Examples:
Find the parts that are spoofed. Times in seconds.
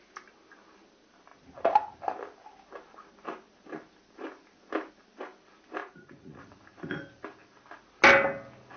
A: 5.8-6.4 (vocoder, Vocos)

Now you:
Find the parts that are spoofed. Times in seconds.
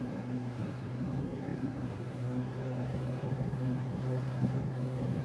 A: 0.0-5.2 (codec, SNAC)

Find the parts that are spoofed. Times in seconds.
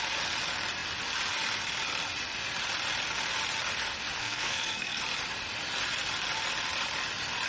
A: 4.2-5.0 (codec, SNAC)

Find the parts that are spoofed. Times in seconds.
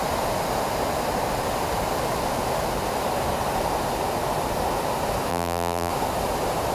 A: 5.3-5.9 (vocoder, BigVGAN v2)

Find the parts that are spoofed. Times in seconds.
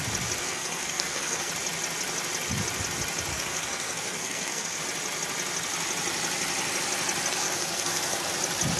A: 0.4-1.5 (codec, SNAC); 3.3-4.8; 7.4-8.3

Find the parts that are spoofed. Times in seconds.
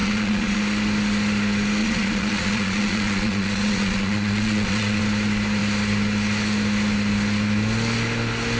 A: 0.0-0.6 (vocoder, Vocos); 1.8-5.0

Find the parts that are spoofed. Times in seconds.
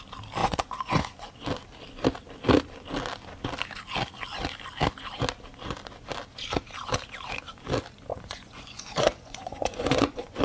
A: 0.4-1.3 (vocoder, Vocos); 8.1-10.4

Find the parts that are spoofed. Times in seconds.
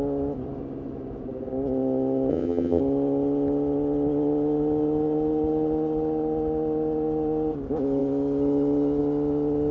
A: 2.3-2.8 (vocoder, HiFi-GAN)